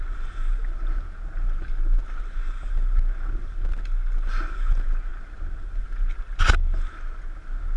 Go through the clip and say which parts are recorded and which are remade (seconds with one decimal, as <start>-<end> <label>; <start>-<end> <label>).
0.0-7.8 recorded